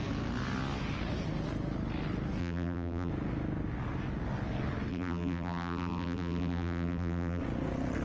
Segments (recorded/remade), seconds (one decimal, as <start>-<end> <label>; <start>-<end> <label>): 0.0-2.4 recorded; 2.4-3.1 remade; 3.1-4.9 recorded; 4.9-7.4 remade; 7.4-8.0 recorded